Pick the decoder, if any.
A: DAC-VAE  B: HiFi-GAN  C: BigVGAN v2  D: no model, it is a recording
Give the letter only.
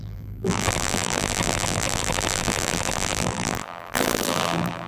C